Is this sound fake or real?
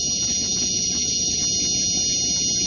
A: real